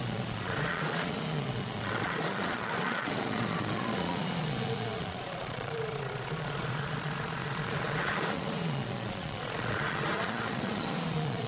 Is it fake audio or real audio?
fake